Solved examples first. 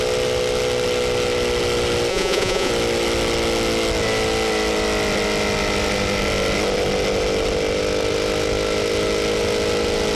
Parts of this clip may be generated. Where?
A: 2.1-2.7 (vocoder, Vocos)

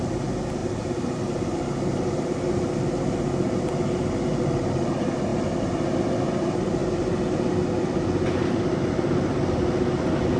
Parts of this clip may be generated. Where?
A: none

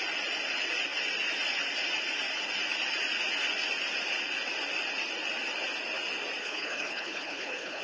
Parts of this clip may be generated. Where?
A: 6.4-7.8 (codec, HILCodec)

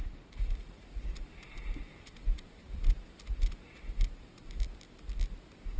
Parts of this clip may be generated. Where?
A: 2.6-3.5 (vocoder, BigVGAN v2)

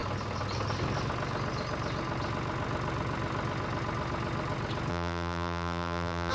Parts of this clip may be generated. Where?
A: 4.9-6.3 (vocoder, BigVGAN v2)

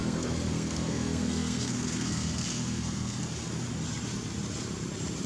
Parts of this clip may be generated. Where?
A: 0.0-3.2 (codec, SNAC)

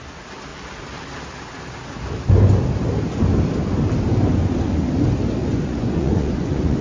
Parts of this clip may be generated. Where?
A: 5.4-6.8 (vocoder, Vocos)

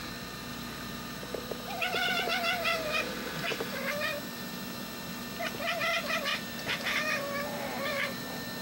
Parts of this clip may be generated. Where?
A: 0.5-2.2 (vocoder, BigVGAN v2); 6.3-8.2